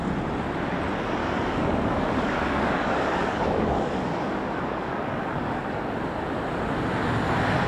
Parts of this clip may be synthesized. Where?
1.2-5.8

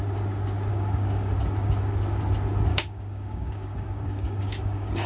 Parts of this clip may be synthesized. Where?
0.7-1.3; 2.7-5.1

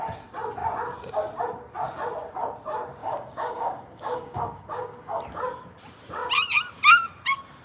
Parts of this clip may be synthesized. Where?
3.0-5.2

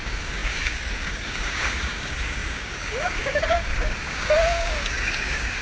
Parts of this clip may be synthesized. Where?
0.0-5.6

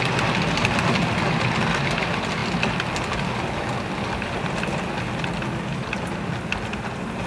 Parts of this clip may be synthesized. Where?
none